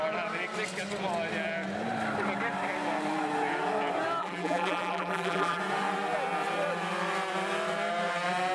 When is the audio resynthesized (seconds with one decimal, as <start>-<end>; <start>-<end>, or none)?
4.2-5.6